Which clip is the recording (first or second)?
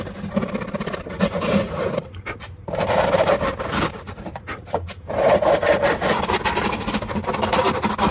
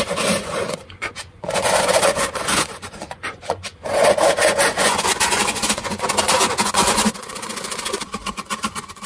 first